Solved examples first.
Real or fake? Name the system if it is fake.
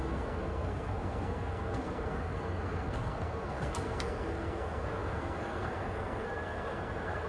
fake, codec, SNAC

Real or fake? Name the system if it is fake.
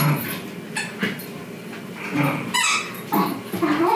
real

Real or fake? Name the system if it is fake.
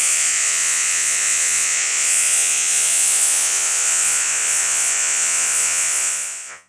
fake, vocoder, Vocos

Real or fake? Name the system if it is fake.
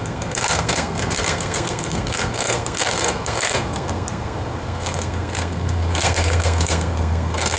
fake, codec, SNAC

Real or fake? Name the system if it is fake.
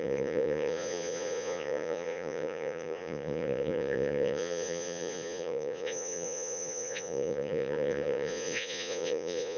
fake, vocoder, Vocos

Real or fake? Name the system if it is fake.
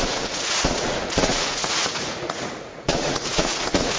fake, vocoder, Vocos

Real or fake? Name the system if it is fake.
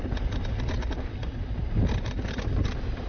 real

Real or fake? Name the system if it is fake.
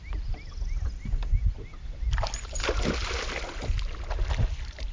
real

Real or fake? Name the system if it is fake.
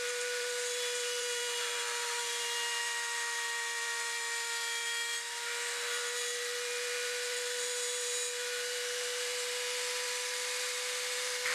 fake, vocoder, BigVGAN v2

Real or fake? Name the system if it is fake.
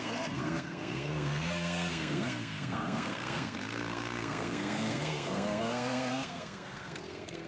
fake, codec, SNAC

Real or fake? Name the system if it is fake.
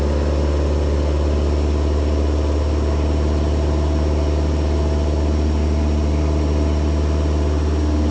real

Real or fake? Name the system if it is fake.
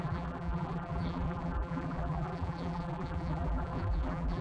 fake, vocoder, BigVGAN v2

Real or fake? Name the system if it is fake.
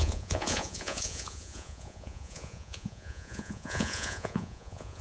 fake, vocoder, Vocos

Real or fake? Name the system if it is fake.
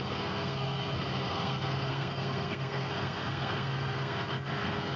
fake, codec, SNAC